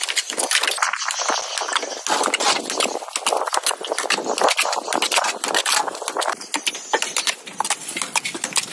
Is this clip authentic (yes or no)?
yes